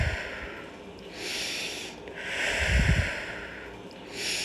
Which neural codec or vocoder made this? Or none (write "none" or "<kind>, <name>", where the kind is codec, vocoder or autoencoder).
none